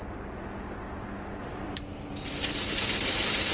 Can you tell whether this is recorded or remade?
recorded